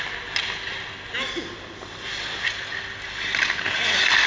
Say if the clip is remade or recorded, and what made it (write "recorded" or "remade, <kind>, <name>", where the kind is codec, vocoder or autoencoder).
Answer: recorded